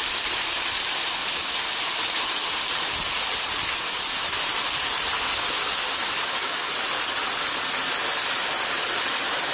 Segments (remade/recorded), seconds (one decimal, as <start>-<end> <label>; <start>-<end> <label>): 0.0-6.0 recorded; 6.0-6.7 remade; 6.7-9.5 recorded